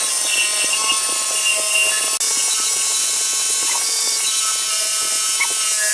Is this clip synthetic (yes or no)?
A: no